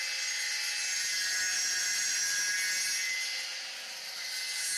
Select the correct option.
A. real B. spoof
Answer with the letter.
A